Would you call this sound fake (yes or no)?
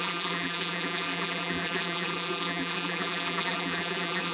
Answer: yes